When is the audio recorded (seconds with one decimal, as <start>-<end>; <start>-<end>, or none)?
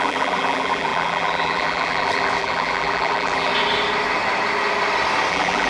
3.5-5.3